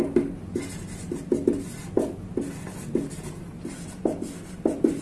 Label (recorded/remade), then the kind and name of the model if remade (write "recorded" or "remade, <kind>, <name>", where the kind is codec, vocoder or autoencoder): recorded